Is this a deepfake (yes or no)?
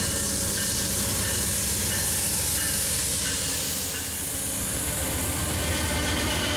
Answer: no